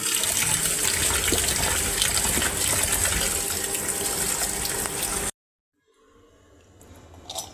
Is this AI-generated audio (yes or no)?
no